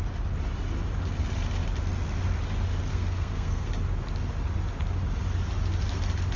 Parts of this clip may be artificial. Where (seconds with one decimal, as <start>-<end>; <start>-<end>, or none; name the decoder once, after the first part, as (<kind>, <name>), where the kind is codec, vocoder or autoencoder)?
2.9-3.7 (codec, SNAC)